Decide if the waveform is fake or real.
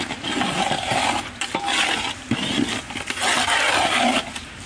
real